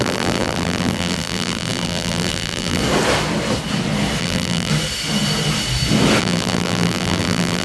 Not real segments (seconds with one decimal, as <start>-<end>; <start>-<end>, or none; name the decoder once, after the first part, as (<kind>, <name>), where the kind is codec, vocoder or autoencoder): 0.0-2.8 (vocoder, BigVGAN v2); 4.2-4.7; 6.2-7.6